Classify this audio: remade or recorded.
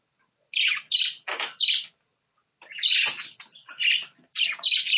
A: recorded